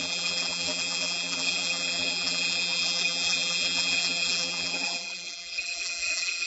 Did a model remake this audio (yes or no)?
yes